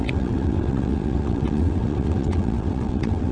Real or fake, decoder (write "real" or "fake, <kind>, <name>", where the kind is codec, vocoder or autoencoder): fake, vocoder, WaveNeXt